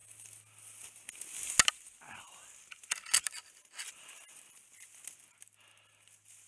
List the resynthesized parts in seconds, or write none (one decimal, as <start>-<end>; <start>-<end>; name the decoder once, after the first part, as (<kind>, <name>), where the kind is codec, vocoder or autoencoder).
none